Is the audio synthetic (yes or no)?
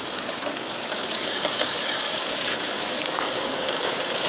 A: yes